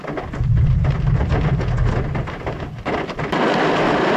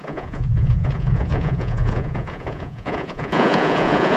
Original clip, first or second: first